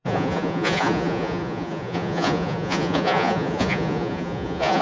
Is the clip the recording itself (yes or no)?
no